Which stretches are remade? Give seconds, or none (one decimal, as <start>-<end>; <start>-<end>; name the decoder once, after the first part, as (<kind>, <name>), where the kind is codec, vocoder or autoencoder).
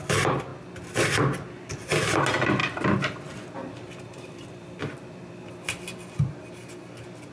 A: 2.6-5.5 (vocoder, BigVGAN v2)